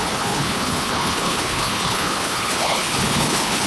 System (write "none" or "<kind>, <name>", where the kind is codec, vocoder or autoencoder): codec, HILCodec